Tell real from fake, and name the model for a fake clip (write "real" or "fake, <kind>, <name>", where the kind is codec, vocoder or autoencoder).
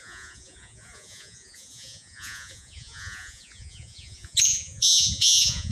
fake, vocoder, Vocos